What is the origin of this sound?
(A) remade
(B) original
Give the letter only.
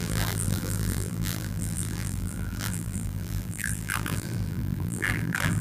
A